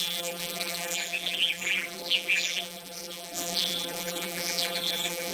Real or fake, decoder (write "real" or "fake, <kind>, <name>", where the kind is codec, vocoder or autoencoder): fake, vocoder, BigVGAN v2